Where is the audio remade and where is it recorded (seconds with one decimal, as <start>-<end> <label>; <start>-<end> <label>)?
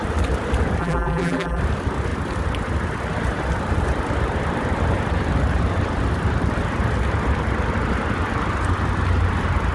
0.0-0.8 recorded; 0.8-1.6 remade; 1.6-9.7 recorded